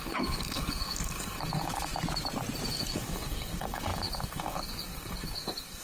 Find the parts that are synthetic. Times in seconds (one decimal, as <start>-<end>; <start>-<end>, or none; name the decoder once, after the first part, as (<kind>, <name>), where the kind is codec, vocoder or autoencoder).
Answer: 0.0-1.9 (codec, DAC); 2.7-5.8